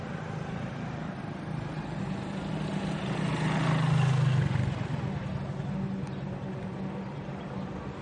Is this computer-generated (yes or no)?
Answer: no